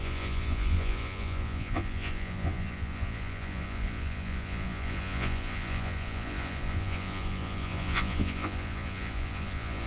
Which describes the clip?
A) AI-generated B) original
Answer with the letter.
A